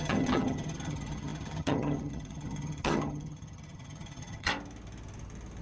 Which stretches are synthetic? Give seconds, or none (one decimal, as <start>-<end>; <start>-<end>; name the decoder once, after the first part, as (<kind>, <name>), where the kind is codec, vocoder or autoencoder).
0.0-4.5 (vocoder, HiFi-GAN)